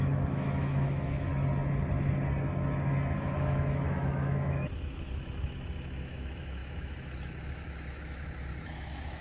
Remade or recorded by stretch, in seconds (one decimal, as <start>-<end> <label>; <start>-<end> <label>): 0.0-1.3 remade; 1.3-3.2 recorded; 3.2-9.2 remade